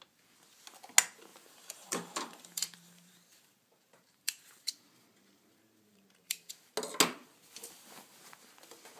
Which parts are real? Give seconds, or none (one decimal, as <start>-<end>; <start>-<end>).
0.0-1.3; 6.5-9.0